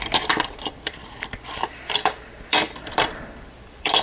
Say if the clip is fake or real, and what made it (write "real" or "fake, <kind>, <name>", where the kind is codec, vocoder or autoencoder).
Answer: fake, vocoder, BigVGAN v2